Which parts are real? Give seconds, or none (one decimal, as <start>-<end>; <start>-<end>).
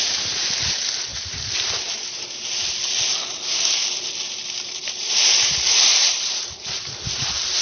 1.1-5.7